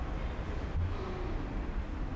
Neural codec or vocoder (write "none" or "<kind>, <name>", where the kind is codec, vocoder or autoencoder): none